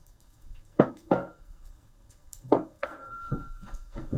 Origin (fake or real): fake